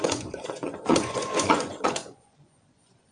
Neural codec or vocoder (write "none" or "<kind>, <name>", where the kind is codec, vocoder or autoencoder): vocoder, Vocos